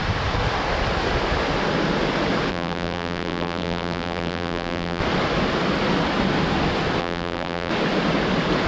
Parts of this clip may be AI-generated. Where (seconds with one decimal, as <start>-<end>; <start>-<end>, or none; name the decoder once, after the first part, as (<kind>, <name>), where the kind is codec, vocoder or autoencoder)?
2.5-5.0 (vocoder, BigVGAN v2); 7.0-7.7